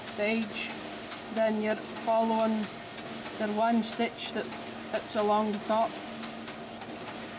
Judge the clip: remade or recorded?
recorded